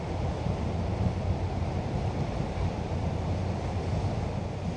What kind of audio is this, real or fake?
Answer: real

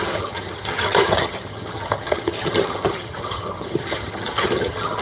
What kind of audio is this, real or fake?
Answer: fake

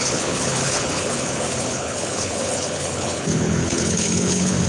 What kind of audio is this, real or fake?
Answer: fake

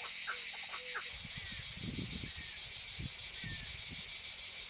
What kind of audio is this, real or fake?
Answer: real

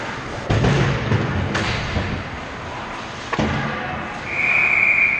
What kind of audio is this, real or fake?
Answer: real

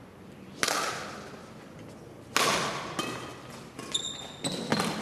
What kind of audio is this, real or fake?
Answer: real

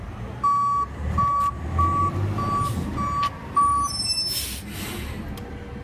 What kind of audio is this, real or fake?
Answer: real